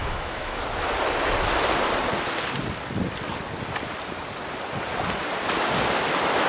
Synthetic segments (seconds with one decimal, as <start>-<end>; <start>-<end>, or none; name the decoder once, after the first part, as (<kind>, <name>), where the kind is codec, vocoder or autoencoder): 0.0-0.6 (autoencoder, DAC-VAE)